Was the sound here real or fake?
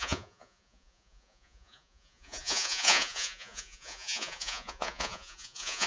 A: fake